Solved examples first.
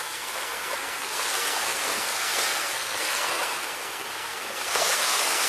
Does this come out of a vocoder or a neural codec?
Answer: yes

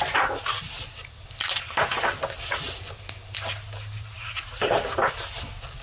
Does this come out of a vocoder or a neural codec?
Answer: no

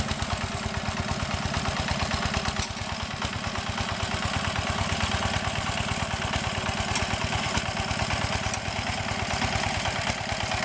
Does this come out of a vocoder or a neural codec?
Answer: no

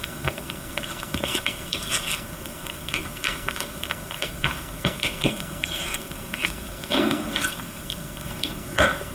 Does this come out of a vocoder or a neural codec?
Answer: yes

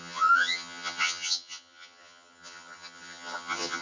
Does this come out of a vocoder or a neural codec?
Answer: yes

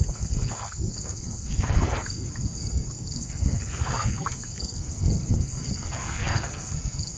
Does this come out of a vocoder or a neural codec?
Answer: yes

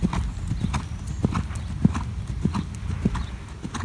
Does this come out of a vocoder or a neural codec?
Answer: no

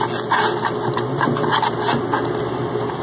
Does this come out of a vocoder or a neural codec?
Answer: no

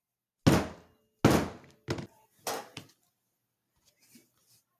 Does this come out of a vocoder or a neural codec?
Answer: no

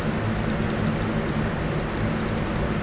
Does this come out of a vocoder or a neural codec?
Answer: no